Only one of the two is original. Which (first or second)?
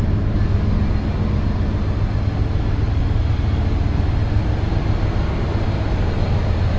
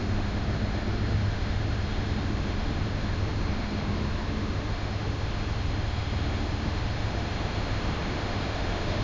first